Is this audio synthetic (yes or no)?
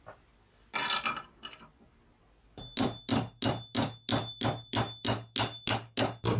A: no